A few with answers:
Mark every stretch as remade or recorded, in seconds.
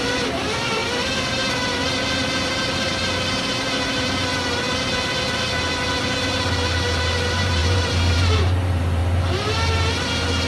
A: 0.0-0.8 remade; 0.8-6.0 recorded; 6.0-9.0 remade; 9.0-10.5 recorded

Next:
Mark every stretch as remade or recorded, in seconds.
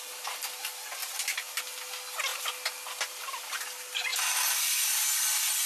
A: 0.0-1.0 recorded; 1.0-1.6 remade; 1.6-4.1 recorded; 4.1-4.7 remade; 4.7-5.7 recorded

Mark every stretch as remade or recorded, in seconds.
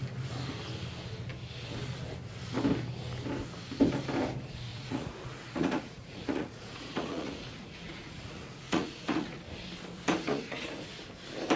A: 0.0-4.7 recorded; 4.7-9.4 remade; 9.4-10.2 recorded; 10.2-11.0 remade; 11.0-11.6 recorded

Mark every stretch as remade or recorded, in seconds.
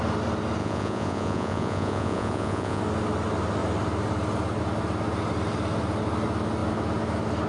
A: 0.0-0.6 recorded; 0.6-2.8 remade; 2.8-7.5 recorded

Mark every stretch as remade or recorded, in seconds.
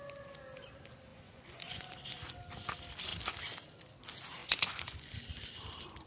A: 0.0-1.1 recorded; 1.1-2.0 remade; 2.0-4.4 recorded; 4.4-5.1 remade; 5.1-6.1 recorded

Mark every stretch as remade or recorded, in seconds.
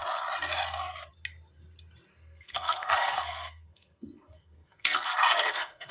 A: 0.0-2.1 recorded; 2.1-5.9 remade